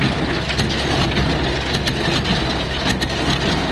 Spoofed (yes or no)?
no